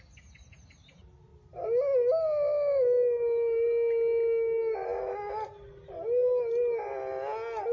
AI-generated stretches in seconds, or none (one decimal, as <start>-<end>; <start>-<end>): none